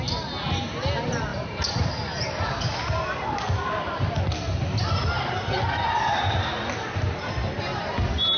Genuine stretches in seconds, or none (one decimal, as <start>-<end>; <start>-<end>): 0.0-1.3; 2.5-8.4